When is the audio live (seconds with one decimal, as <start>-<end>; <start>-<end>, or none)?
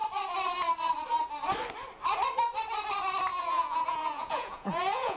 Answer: 0.0-3.3